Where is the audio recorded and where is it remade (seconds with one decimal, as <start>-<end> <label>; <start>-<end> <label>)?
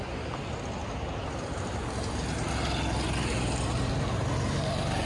0.0-5.1 recorded